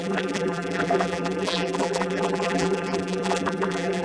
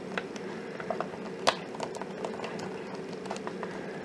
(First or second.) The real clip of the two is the second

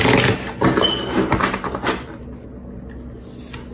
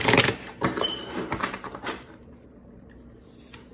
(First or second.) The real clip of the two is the first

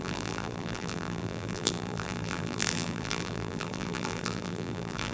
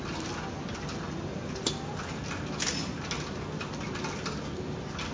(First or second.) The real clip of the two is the second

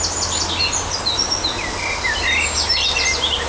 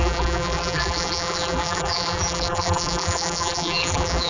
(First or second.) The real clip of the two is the first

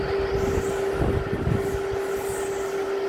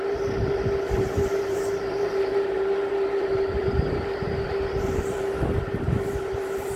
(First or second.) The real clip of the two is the first